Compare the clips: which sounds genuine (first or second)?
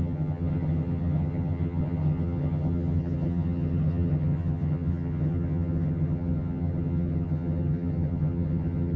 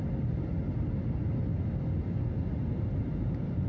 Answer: second